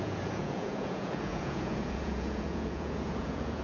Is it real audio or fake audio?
fake